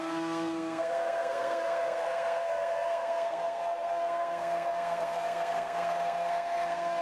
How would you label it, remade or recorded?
remade